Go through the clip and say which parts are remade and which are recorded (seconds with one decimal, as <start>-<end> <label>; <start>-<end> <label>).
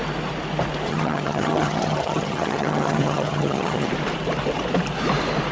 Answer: 0.0-0.9 recorded; 0.9-3.9 remade; 3.9-5.5 recorded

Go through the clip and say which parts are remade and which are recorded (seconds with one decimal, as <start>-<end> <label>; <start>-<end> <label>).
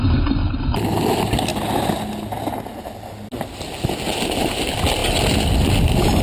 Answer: 0.0-6.2 recorded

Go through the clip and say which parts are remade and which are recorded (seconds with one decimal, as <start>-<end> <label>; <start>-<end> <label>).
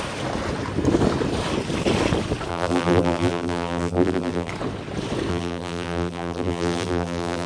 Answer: 0.0-2.5 recorded; 2.5-4.5 remade; 4.5-5.3 recorded; 5.3-7.5 remade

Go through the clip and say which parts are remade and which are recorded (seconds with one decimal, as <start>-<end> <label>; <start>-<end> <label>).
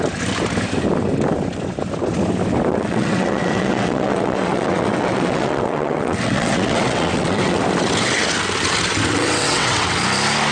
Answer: 0.0-2.7 recorded; 2.7-7.6 remade; 7.6-9.1 recorded; 9.1-10.0 remade; 10.0-10.5 recorded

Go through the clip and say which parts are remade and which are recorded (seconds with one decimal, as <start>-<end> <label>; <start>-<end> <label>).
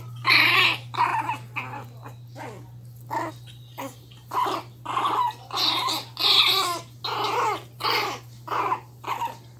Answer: 0.0-9.6 recorded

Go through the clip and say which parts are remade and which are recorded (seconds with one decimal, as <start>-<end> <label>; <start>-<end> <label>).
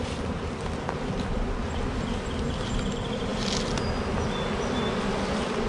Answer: 0.0-5.7 recorded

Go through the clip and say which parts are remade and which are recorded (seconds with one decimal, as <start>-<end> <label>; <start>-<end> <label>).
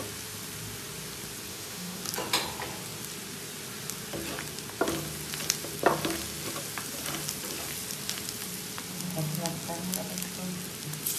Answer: 0.0-1.5 recorded; 1.5-2.0 remade; 2.0-11.2 recorded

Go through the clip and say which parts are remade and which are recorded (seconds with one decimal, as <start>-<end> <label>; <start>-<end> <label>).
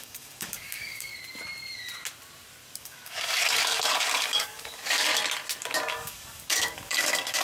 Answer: 0.0-1.1 remade; 1.1-2.8 recorded; 2.8-5.1 remade; 5.1-5.9 recorded; 5.9-7.4 remade